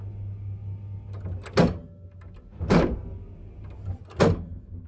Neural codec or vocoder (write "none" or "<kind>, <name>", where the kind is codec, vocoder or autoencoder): none